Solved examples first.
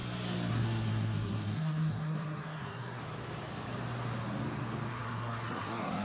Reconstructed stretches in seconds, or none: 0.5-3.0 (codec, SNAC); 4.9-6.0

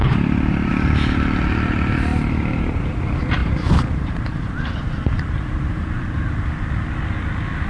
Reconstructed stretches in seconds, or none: 0.0-0.7 (vocoder, BigVGAN v2); 2.1-2.9; 3.4-6.4

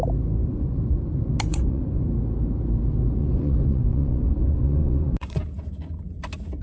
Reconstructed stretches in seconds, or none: 1.5-2.0 (vocoder, Vocos); 3.2-5.4

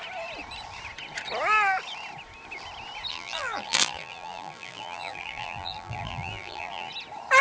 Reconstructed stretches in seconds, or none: 3.1-6.9 (vocoder, BigVGAN v2)

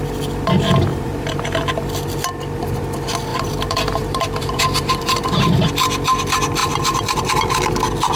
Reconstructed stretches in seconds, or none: 0.9-1.7 (vocoder, BigVGAN v2); 3.3-5.2; 6.6-7.2

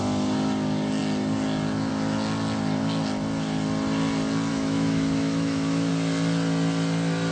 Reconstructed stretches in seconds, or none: 4.5-5.9 (autoencoder, DAC-VAE)

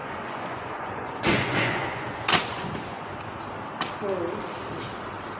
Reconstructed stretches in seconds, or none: 0.0-3.2 (vocoder, Vocos)